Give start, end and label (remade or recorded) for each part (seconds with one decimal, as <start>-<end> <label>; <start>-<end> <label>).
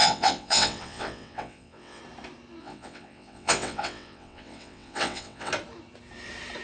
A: 0.0-2.0 remade; 2.0-2.6 recorded; 2.6-5.5 remade; 5.5-6.6 recorded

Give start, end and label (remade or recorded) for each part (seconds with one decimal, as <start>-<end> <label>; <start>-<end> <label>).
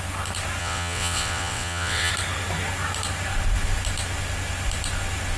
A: 0.0-0.6 recorded; 0.6-2.1 remade; 2.1-5.4 recorded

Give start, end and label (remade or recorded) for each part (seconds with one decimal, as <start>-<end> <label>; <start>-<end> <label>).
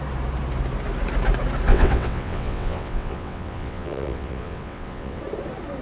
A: 0.0-1.7 recorded; 1.7-5.2 remade; 5.2-5.8 recorded